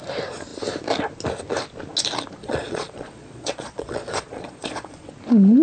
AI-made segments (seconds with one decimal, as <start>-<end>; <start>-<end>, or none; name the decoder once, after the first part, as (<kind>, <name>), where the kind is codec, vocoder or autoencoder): 2.4-5.1 (vocoder, Vocos)